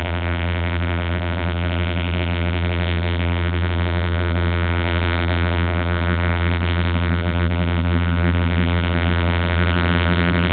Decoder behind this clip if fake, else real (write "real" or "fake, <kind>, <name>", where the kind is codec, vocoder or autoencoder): fake, vocoder, BigVGAN v2